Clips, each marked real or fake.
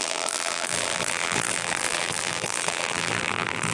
fake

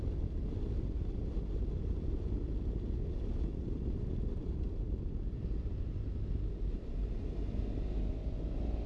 real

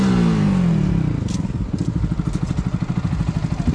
real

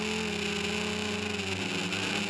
real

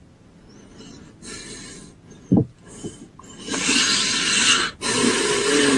real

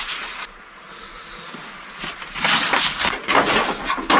real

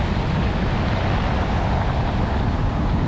real